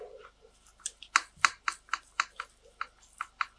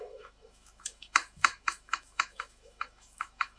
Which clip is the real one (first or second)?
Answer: first